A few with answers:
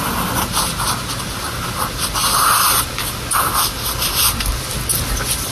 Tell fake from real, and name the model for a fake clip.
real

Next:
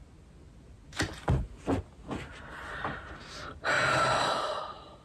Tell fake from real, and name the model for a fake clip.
real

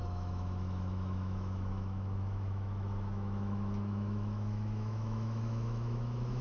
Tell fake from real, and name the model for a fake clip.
fake, autoencoder, DAC-VAE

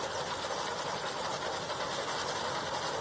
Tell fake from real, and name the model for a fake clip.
real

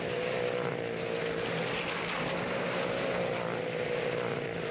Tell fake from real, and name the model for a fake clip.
real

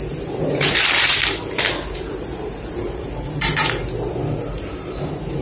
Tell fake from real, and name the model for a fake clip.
fake, vocoder, BigVGAN v2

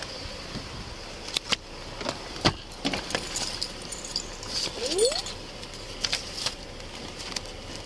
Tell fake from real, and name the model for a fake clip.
real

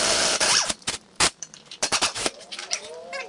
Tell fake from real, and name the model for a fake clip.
fake, vocoder, BigVGAN v2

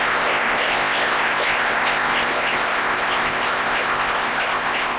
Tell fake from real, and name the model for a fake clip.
fake, codec, ZipCodec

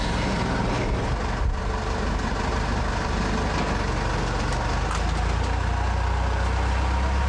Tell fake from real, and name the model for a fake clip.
real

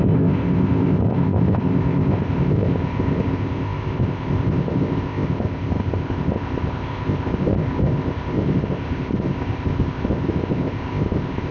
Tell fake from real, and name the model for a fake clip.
fake, codec, ZipCodec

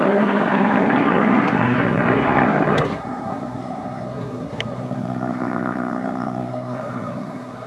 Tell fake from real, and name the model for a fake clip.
fake, codec, SNAC